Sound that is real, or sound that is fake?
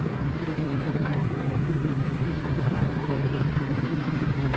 fake